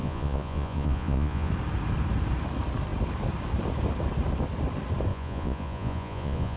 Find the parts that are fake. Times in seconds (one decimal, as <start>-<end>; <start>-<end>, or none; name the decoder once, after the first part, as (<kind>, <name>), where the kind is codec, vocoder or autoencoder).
0.0-1.5 (vocoder, Vocos); 5.1-6.6